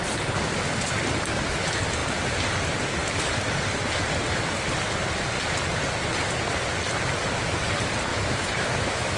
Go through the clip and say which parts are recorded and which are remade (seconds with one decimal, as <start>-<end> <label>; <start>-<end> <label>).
0.0-8.1 recorded; 8.1-9.2 remade